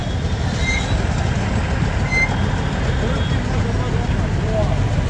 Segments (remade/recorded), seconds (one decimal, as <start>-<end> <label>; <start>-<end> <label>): 0.0-5.1 recorded